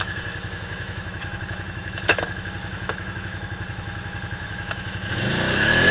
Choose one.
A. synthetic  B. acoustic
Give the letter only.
A